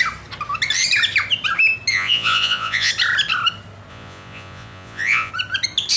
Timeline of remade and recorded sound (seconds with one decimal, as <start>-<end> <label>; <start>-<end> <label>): 0.0-1.9 recorded; 1.9-2.9 remade; 2.9-3.9 recorded; 3.9-5.3 remade; 5.3-6.0 recorded